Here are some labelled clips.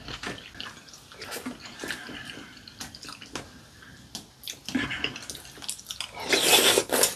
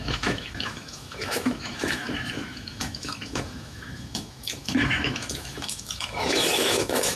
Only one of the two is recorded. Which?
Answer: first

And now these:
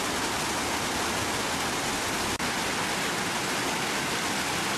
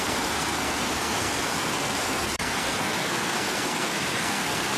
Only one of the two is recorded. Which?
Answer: first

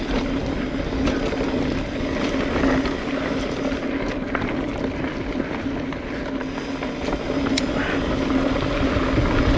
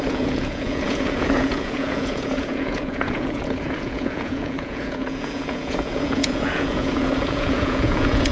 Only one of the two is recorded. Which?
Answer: first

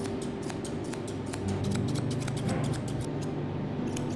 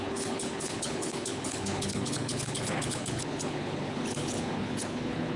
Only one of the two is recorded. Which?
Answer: first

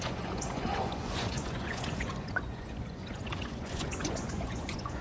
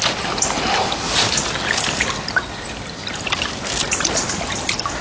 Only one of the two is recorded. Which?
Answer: second